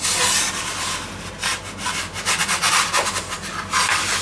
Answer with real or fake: real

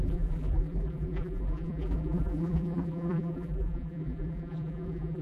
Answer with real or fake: fake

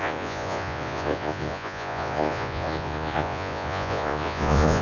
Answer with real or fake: fake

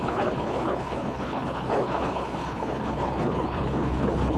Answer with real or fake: fake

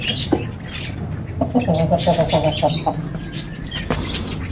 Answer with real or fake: real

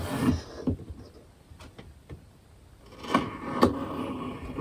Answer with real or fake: real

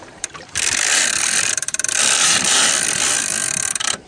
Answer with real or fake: fake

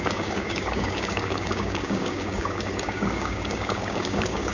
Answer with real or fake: fake